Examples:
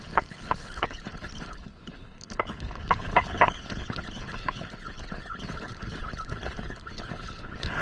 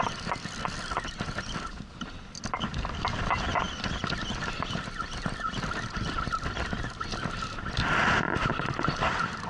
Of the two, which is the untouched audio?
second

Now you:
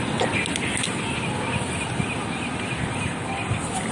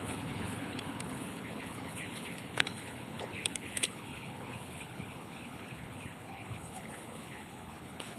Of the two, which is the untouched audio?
first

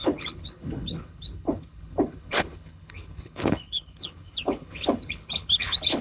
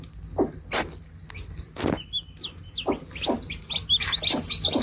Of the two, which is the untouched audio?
second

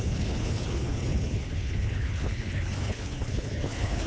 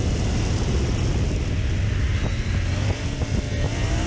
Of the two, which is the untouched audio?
second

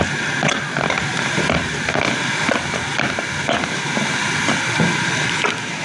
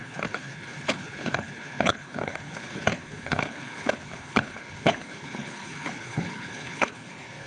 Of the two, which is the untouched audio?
first